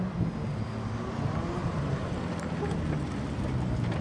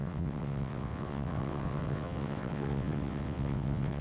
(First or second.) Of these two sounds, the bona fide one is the first